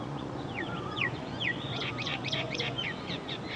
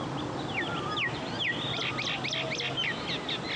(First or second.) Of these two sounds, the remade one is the first